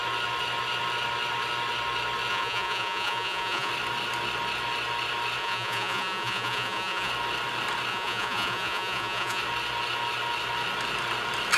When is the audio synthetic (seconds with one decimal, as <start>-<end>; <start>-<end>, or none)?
2.3-3.7; 5.4-7.1; 7.9-9.4